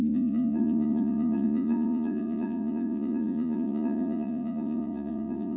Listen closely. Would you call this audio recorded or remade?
remade